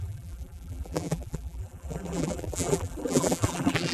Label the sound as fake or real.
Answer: fake